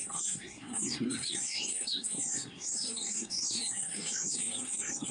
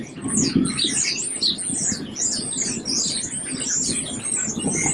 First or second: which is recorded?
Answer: second